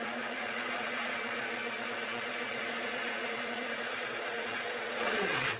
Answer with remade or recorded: remade